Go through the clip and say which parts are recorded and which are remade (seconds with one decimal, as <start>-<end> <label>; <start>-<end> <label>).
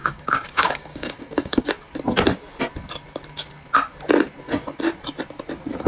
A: 0.0-1.7 remade; 1.7-5.9 recorded